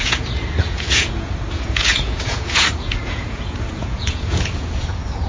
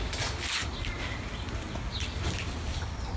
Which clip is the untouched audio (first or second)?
second